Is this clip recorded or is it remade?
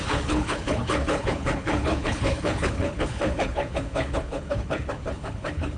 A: remade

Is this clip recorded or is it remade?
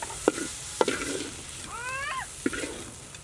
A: recorded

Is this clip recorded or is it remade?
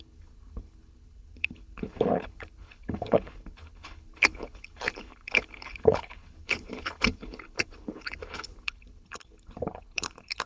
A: remade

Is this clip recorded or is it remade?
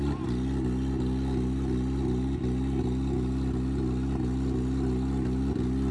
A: recorded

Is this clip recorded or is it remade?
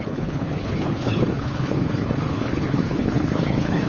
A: remade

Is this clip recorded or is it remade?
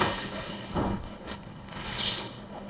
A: remade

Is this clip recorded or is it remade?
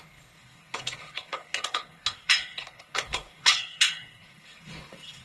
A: remade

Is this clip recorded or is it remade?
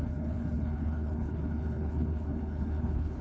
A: remade